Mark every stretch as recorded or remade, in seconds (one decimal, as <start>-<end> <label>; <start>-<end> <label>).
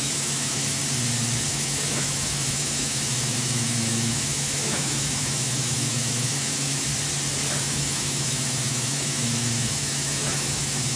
0.0-0.8 remade; 0.8-1.5 recorded; 1.5-6.9 remade; 6.9-7.6 recorded; 7.6-11.0 remade